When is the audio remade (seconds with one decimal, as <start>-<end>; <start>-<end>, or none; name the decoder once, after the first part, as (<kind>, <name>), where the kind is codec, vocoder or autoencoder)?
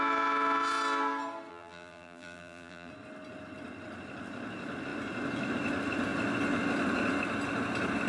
1.5-2.9 (vocoder, BigVGAN v2)